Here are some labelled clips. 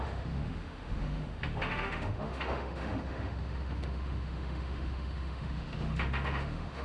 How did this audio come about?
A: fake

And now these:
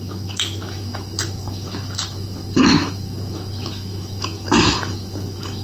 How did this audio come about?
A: fake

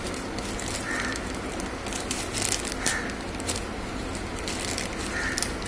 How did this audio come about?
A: real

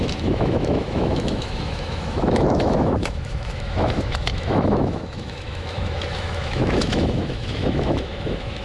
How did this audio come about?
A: fake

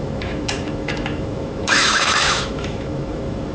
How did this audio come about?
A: fake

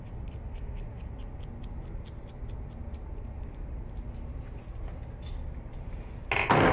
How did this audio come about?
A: real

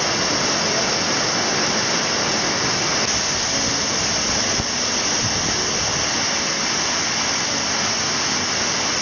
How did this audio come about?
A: real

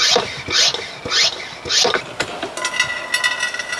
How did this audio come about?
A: real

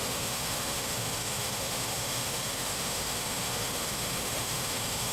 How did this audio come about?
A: fake